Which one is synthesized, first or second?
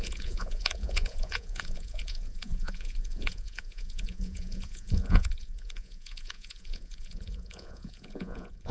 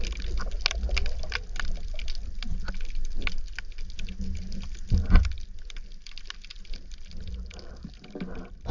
first